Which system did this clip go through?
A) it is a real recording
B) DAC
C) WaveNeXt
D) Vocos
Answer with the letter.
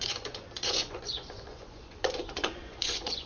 D